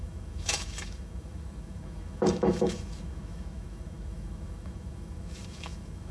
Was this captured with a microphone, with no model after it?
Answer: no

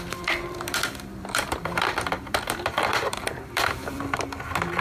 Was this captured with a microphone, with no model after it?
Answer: no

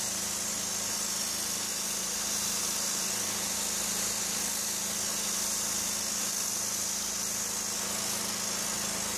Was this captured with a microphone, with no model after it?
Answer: yes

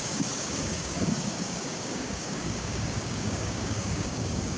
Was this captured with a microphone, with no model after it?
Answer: no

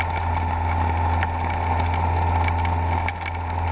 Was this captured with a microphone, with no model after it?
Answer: yes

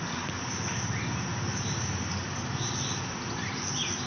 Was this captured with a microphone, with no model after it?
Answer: yes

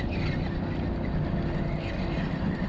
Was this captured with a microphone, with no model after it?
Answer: yes